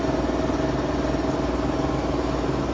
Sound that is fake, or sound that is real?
real